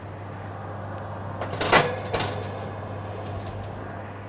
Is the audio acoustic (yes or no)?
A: yes